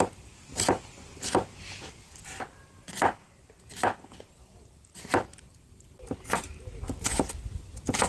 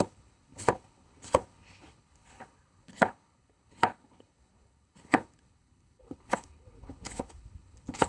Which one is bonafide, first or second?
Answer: first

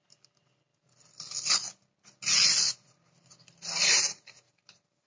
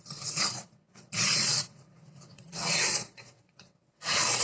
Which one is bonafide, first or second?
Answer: first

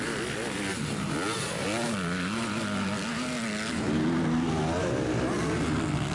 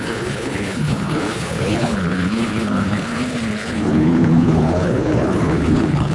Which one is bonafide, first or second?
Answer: first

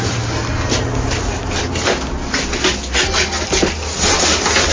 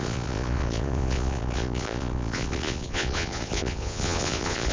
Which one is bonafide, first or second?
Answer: first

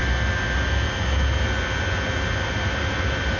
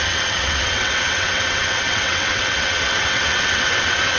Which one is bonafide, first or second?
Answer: first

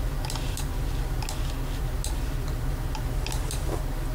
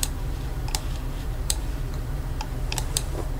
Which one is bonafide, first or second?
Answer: first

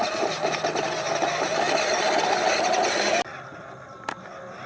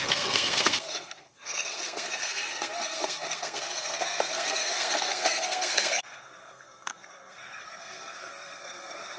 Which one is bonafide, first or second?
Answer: first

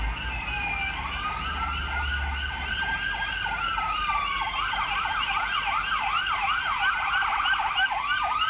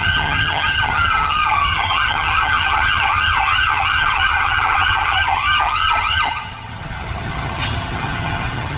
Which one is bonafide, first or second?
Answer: first